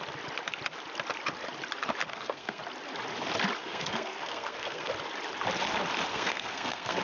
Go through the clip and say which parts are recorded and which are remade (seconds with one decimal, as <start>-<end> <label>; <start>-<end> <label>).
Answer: 0.0-2.1 recorded; 2.1-2.6 remade; 2.6-3.6 recorded; 3.6-4.9 remade; 4.9-6.1 recorded; 6.1-7.0 remade